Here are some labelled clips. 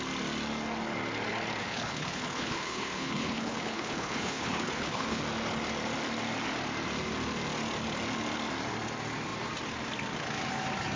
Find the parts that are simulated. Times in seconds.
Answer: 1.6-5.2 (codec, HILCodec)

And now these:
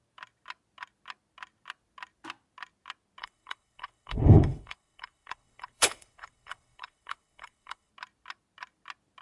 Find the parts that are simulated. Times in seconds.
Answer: 3.2-7.9 (codec, HILCodec)

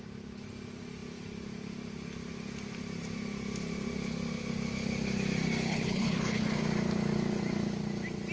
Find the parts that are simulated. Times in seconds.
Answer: 5.7-6.6 (codec, HILCodec)